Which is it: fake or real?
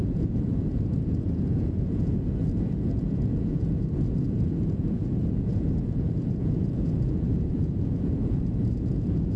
fake